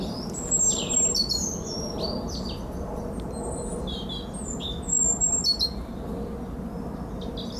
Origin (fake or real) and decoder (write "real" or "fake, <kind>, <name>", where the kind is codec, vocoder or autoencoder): real